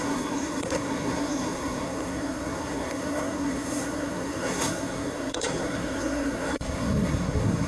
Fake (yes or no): yes